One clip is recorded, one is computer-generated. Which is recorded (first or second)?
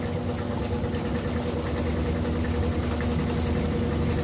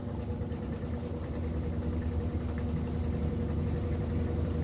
first